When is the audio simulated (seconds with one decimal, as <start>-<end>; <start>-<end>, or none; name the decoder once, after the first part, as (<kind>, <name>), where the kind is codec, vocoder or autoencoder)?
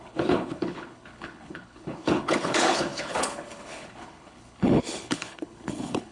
0.0-6.1 (codec, HILCodec)